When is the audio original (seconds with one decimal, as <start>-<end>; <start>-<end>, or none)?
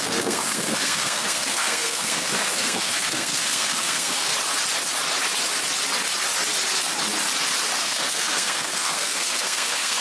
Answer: 4.3-7.8